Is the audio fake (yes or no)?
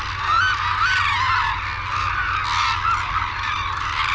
no